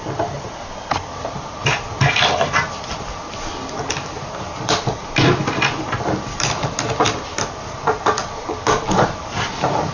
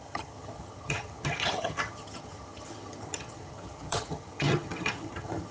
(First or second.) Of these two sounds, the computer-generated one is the second